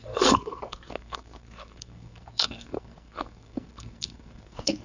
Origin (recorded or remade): remade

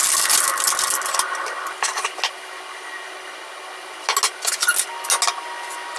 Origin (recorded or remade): recorded